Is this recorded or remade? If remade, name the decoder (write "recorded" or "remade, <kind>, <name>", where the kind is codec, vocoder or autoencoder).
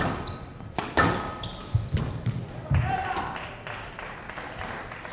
recorded